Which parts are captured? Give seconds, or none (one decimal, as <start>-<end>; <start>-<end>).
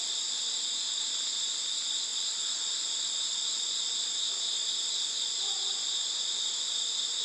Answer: 0.0-7.2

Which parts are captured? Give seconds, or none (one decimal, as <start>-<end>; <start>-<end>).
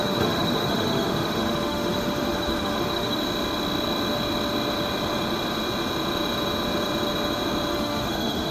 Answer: 3.2-7.7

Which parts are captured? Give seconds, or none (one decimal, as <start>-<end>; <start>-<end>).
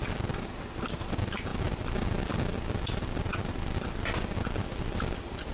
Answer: 0.0-5.5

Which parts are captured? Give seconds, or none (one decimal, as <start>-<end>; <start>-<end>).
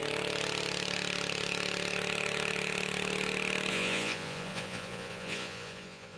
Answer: 0.0-3.7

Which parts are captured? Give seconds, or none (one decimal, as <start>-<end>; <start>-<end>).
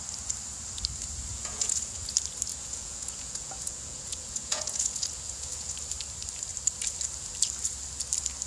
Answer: 0.0-1.3; 2.1-2.5; 5.7-8.5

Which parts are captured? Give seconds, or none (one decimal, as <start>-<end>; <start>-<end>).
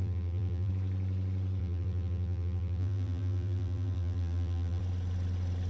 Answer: 0.7-1.6; 4.8-5.7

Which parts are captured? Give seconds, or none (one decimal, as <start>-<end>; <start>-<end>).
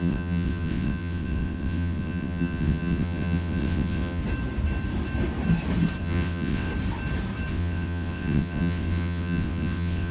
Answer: 4.2-6.0; 6.7-7.5